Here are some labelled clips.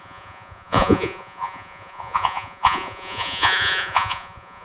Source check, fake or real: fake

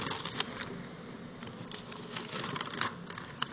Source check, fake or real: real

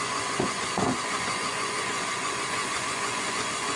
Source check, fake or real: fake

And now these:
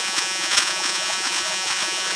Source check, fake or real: fake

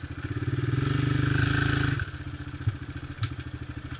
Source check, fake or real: real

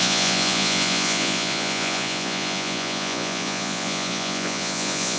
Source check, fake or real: fake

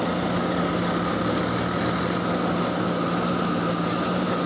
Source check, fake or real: real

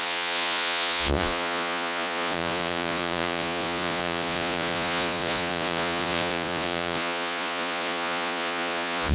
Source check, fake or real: fake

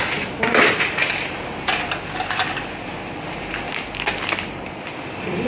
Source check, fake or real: real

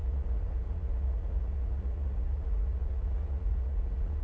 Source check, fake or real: fake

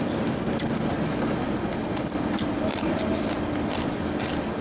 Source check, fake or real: real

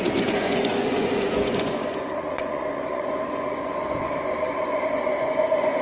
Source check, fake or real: fake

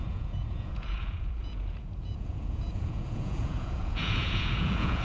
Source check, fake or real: fake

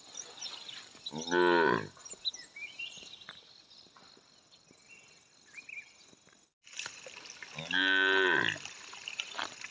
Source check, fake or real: real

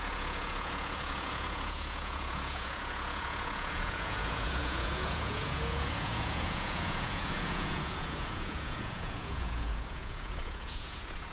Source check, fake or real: fake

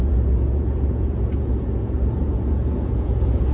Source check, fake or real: fake